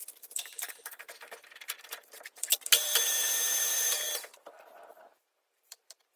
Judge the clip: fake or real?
fake